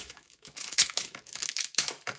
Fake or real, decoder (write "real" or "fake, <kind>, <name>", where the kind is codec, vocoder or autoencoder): fake, autoencoder, DAC-VAE